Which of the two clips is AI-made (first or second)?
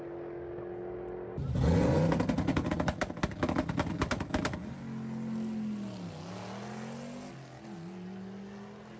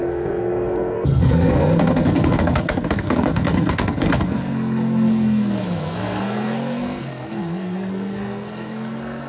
second